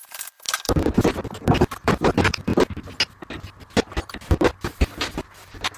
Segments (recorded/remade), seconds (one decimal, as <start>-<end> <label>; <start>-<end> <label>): 0.0-2.5 remade; 2.5-4.0 recorded; 4.0-5.8 remade